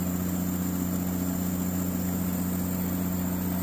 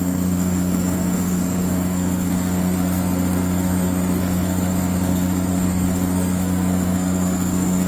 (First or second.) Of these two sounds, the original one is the first